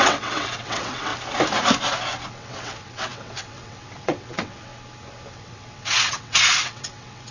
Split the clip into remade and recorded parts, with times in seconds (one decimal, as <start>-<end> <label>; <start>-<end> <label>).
0.0-1.1 remade; 1.1-2.3 recorded; 2.3-4.7 remade; 4.7-5.3 recorded; 5.3-7.3 remade